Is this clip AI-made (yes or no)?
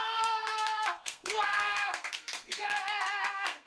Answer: yes